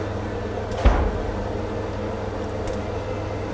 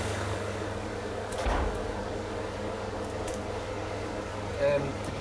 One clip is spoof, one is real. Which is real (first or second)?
first